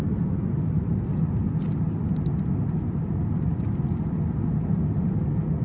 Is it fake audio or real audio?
real